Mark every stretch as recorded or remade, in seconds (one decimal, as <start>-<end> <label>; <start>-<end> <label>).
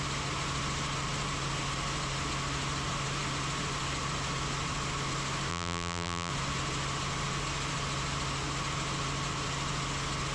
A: 0.0-5.5 recorded; 5.5-6.3 remade; 6.3-10.3 recorded